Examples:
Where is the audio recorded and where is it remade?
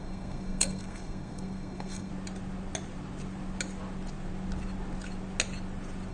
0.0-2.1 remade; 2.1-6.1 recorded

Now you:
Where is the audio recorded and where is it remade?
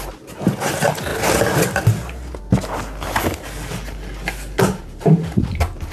0.0-5.9 recorded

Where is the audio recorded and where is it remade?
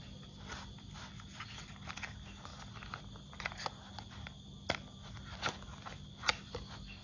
0.0-7.0 recorded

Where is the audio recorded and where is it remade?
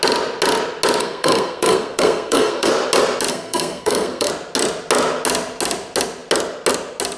0.0-1.0 recorded; 1.0-2.7 remade; 2.7-3.3 recorded; 3.3-4.3 remade; 4.3-7.2 recorded